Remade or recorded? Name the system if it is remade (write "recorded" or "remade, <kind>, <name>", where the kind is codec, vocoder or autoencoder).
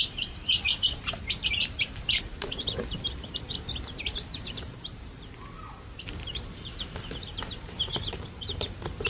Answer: remade, vocoder, BigVGAN v2